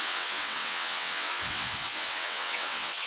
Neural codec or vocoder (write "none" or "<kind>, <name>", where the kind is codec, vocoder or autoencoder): vocoder, WaveNeXt